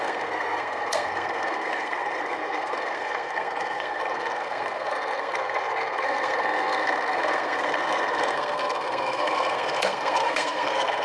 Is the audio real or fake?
fake